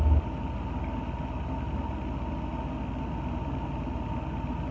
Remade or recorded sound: recorded